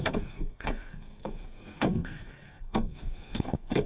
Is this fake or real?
fake